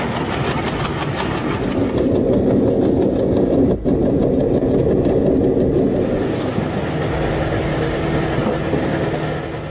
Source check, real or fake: real